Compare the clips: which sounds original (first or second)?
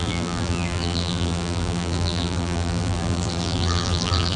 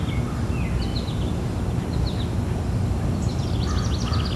second